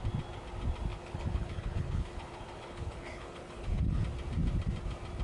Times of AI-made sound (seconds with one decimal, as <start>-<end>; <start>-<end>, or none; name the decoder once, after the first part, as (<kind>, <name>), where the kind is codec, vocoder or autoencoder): 0.9-4.0 (codec, HILCodec)